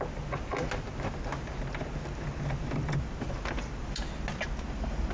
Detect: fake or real real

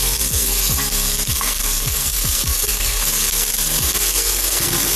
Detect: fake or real fake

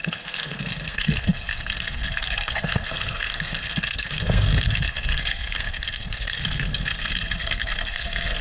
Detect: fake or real fake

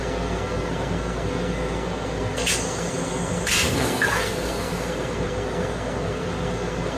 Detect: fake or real fake